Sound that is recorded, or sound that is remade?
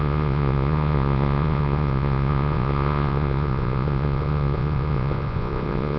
remade